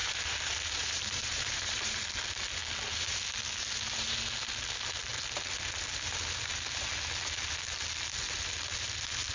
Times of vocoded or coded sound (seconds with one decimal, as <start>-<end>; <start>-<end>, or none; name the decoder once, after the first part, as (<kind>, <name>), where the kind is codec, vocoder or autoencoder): 0.0-2.0 (vocoder, BigVGAN v2)